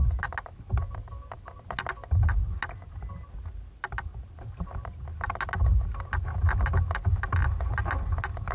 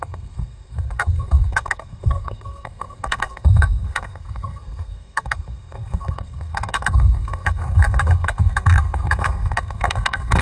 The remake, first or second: second